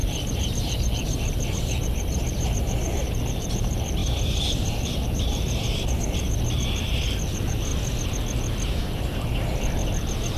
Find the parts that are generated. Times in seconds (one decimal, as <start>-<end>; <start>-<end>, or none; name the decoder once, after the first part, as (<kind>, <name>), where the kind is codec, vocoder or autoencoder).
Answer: 0.0-7.7 (vocoder, BigVGAN v2)